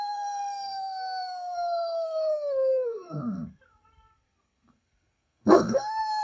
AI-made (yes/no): yes